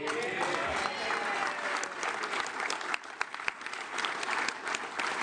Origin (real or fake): real